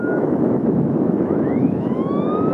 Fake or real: fake